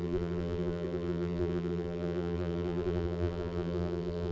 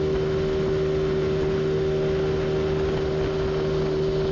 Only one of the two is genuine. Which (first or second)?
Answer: second